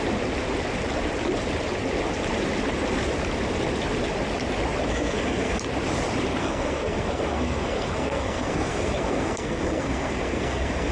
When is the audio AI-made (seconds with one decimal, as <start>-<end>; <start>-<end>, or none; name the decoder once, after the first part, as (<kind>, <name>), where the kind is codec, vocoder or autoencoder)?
4.9-5.6 (codec, SNAC); 6.4-10.9